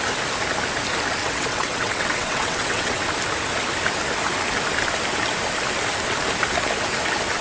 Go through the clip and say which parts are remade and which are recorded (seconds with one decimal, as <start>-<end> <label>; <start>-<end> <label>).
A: 0.0-1.2 recorded; 1.2-3.0 remade; 3.0-7.4 recorded